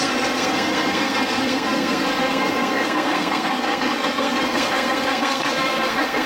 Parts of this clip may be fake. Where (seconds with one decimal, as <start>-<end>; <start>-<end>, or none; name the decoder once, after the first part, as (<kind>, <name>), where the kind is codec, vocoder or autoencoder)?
0.0-6.3 (codec, SNAC)